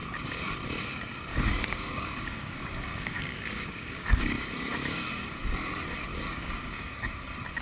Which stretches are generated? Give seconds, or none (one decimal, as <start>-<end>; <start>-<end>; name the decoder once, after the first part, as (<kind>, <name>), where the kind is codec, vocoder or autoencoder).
1.3-5.3 (codec, DAC); 6.1-7.1